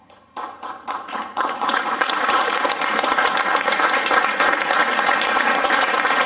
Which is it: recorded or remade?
remade